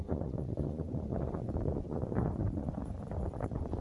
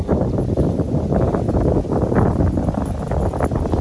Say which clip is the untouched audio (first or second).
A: second